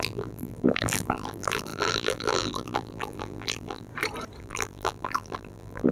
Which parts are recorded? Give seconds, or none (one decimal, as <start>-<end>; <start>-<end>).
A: 3.9-4.4